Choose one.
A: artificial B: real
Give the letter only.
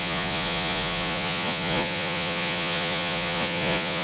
A